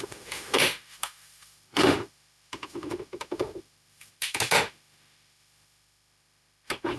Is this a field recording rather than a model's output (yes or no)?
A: no